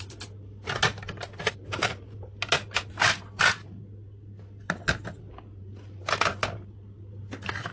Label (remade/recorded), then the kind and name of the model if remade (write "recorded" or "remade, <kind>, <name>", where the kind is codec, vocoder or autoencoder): recorded